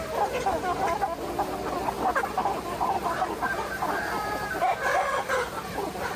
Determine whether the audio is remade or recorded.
recorded